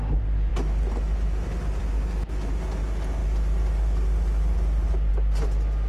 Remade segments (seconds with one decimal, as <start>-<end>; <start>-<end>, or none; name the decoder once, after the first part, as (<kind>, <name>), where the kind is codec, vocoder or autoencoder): none